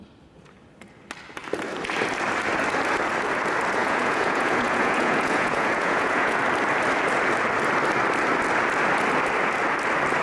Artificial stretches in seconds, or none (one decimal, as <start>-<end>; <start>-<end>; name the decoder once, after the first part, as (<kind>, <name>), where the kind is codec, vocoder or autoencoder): 3.8-6.4 (vocoder, Vocos)